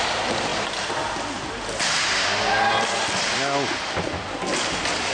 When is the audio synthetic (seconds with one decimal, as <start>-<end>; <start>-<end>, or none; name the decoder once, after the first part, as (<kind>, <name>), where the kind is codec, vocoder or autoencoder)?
none